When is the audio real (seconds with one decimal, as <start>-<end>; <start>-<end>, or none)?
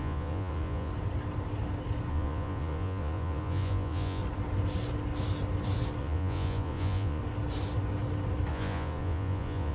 0.9-2.1; 4.2-6.0; 7.2-8.5